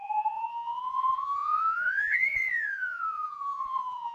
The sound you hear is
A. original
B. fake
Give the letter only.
B